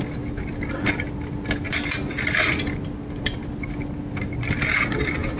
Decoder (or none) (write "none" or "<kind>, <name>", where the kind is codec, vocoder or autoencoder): none